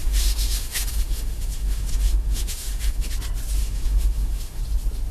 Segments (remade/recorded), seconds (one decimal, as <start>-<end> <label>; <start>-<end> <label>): 0.0-3.1 remade; 3.1-3.6 recorded; 3.6-4.6 remade; 4.6-5.1 recorded